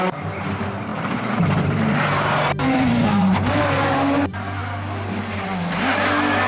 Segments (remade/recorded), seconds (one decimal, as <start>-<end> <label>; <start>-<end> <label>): 0.0-4.6 remade; 4.6-6.5 recorded